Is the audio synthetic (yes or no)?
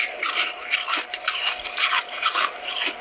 yes